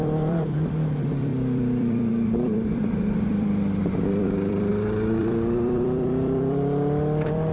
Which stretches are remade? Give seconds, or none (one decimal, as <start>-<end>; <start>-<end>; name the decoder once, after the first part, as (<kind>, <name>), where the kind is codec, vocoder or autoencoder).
0.0-4.7 (vocoder, BigVGAN v2); 5.2-7.5